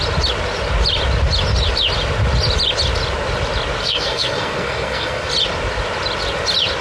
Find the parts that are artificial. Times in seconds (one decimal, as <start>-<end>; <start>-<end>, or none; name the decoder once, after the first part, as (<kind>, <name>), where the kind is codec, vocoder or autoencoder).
3.8-5.3 (codec, SNAC)